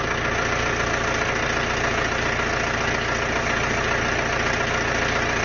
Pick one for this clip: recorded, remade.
recorded